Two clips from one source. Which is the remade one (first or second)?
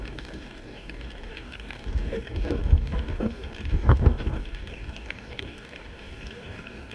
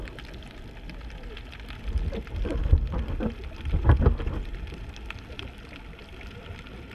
first